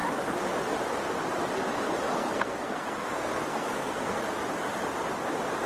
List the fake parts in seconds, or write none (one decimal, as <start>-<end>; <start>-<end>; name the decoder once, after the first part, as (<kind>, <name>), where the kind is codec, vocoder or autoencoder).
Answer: 2.1-4.2 (codec, SNAC)